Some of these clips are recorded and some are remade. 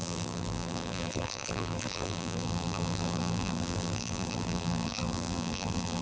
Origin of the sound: remade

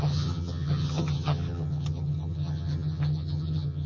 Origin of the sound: remade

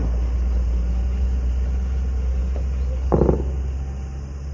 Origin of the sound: recorded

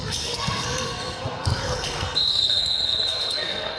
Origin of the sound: remade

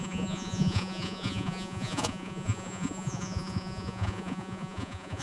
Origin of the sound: remade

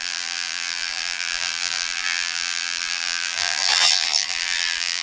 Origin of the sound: remade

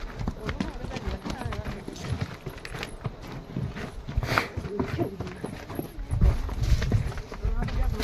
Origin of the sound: recorded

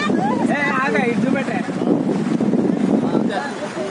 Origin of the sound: recorded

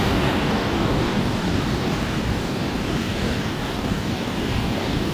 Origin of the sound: remade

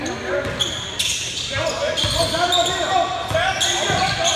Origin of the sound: recorded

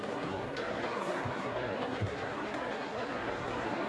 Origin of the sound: remade